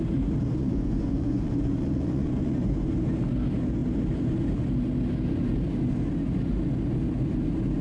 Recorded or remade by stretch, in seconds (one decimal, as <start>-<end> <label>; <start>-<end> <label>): 0.0-0.6 recorded; 0.6-2.9 remade; 2.9-7.8 recorded